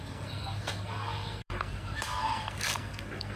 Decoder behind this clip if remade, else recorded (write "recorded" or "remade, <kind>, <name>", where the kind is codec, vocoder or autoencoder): remade, codec, SNAC